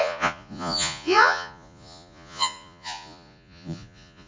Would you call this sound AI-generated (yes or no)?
yes